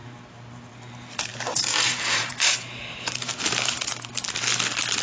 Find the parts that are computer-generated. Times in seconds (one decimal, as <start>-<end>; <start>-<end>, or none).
0.0-0.7; 1.3-4.1